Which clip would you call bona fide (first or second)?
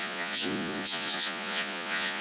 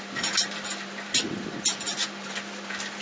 second